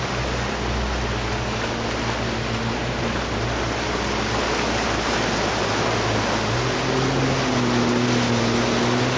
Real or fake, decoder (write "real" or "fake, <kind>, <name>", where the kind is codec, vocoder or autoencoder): real